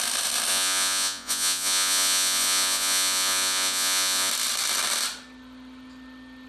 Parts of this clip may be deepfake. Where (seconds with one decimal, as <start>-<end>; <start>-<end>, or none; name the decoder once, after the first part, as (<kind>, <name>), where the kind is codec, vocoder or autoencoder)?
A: 0.5-4.3 (vocoder, Vocos)